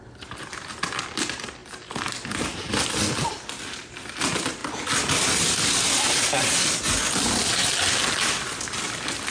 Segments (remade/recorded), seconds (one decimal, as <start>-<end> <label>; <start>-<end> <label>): 0.0-9.3 recorded